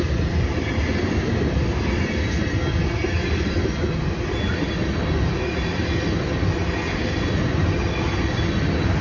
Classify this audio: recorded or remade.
recorded